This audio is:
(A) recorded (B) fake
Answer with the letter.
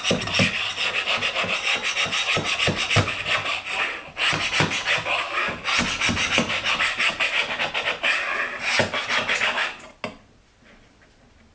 A